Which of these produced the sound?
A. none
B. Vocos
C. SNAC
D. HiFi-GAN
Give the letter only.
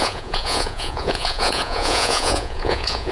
B